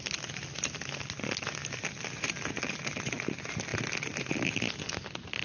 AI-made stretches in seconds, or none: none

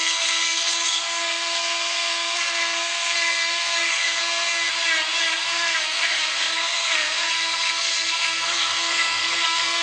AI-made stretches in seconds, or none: 0.0-4.2 (codec, SNAC); 5.2-9.8

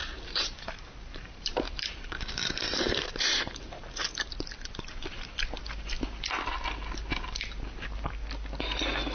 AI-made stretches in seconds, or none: 0.0-3.7 (vocoder, BigVGAN v2)

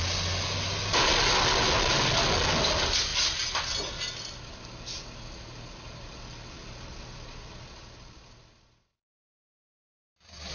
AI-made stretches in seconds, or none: none

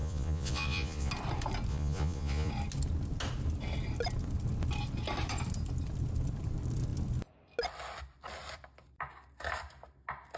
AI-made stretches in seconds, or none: 0.0-1.1 (vocoder, Vocos); 1.7-2.5